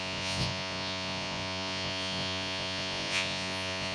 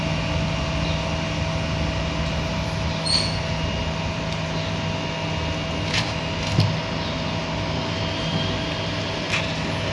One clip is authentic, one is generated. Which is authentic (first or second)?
second